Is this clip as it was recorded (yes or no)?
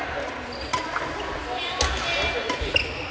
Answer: yes